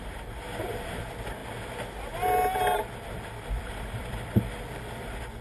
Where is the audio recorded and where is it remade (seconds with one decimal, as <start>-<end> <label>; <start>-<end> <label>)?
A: 0.0-1.4 remade; 1.4-3.5 recorded; 3.5-5.4 remade